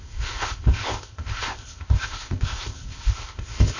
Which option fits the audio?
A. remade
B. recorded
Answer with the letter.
A